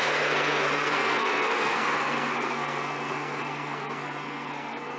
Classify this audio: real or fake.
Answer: fake